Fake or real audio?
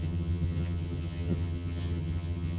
fake